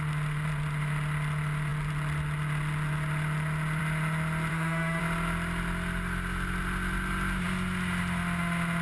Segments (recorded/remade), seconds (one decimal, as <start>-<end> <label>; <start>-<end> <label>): 0.0-4.5 recorded; 4.5-5.0 remade; 5.0-8.8 recorded